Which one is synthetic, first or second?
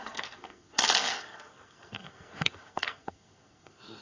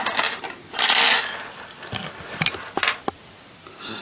first